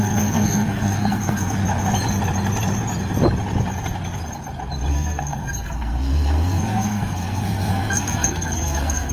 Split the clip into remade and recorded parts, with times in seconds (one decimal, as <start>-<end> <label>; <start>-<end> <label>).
0.0-1.6 remade; 1.6-4.9 recorded; 4.9-9.1 remade